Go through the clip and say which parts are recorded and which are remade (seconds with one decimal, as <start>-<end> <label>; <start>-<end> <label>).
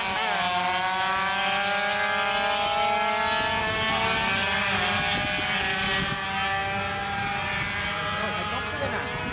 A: 0.0-9.3 recorded